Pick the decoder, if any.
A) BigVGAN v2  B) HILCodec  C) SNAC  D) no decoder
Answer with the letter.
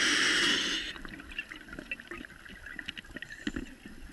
D